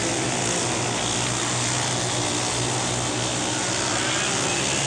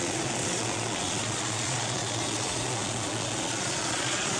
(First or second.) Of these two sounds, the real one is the first